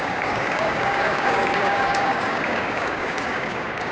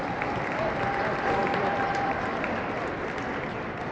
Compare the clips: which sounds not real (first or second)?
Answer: first